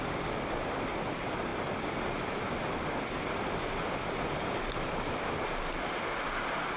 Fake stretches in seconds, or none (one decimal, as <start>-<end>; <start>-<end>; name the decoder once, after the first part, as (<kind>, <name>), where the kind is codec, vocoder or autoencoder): none